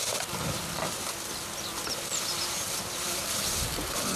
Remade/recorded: recorded